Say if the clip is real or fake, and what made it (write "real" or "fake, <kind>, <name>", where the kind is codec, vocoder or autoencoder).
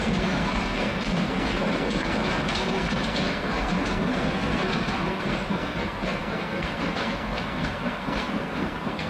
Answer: fake, codec, SNAC